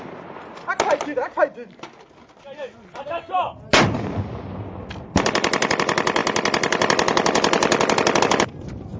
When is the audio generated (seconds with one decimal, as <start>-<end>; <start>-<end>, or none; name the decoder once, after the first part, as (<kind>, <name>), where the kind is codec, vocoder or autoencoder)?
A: none

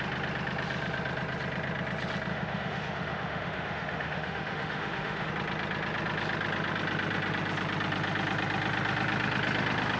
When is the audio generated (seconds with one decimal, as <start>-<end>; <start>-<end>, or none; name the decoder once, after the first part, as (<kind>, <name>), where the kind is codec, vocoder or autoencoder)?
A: 2.3-5.3 (autoencoder, DAC-VAE)

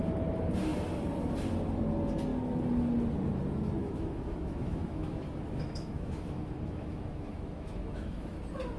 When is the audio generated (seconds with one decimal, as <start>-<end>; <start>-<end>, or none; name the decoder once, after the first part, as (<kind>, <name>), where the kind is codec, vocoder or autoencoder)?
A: 3.8-8.4 (autoencoder, DAC-VAE)

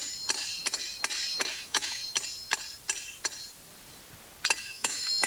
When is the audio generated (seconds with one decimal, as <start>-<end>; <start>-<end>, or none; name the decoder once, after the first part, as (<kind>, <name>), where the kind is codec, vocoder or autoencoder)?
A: 1.5-2.0 (autoencoder, DAC-VAE); 4.6-5.3

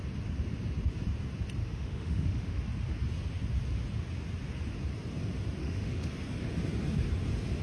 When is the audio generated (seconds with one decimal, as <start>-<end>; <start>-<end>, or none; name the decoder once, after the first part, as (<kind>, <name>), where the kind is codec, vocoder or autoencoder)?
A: 1.6-2.6 (autoencoder, DAC-VAE); 5.6-6.1

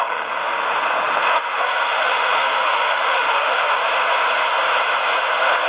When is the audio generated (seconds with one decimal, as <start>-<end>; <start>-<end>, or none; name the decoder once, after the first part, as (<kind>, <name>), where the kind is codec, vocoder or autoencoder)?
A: 0.4-3.8 (autoencoder, DAC-VAE)